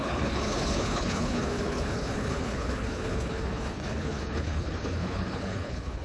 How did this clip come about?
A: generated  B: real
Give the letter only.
A